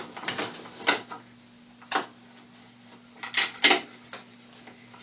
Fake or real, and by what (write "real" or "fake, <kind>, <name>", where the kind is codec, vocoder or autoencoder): real